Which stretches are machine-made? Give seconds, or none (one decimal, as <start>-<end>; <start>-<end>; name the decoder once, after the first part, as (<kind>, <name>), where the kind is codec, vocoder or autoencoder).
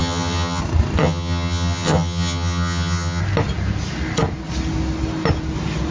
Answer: 0.0-0.6 (vocoder, HiFi-GAN); 1.0-3.2